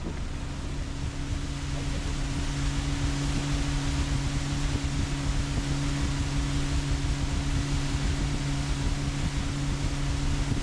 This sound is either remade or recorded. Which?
recorded